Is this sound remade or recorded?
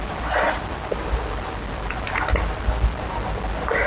recorded